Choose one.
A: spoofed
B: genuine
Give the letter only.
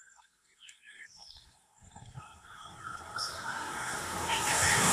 A